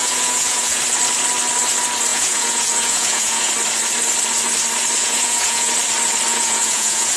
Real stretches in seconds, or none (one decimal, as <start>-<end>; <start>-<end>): 0.8-2.1; 3.5-5.0; 5.7-6.3